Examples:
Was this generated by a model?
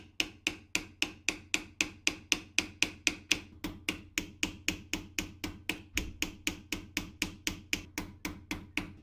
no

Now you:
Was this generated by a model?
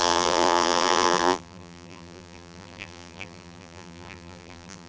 yes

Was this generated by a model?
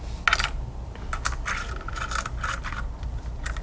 no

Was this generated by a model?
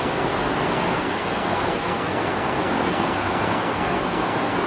yes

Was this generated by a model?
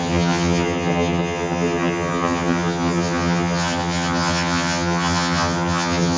yes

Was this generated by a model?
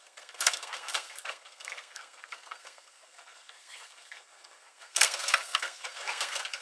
yes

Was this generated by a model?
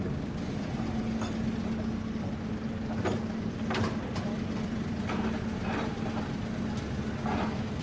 no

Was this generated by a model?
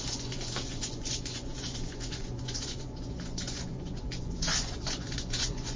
yes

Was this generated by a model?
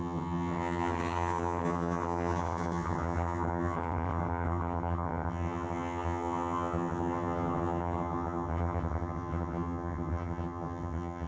yes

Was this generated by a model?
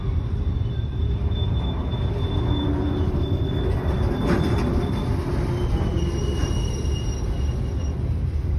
no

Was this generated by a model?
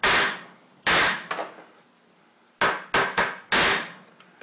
no